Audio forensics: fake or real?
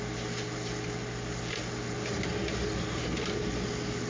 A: real